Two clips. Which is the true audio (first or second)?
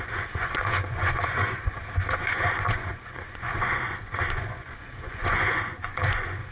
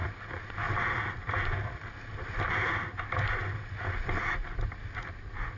second